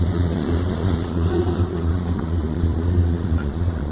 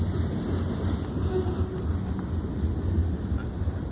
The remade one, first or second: first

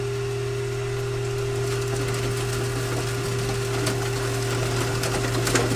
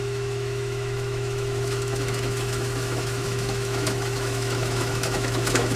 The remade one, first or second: second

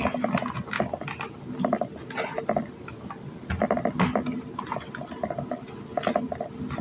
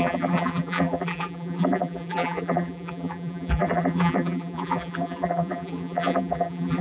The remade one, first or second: second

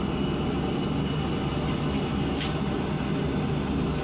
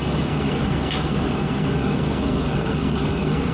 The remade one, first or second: second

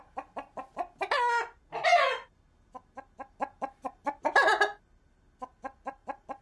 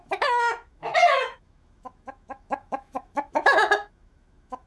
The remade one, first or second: second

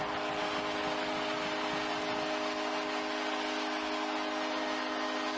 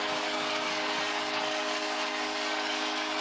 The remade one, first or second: second